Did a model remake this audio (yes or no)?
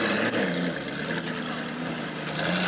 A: no